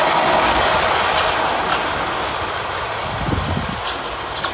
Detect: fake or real real